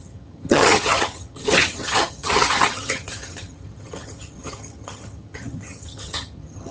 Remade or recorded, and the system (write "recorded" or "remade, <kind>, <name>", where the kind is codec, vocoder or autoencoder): remade, vocoder, HiFi-GAN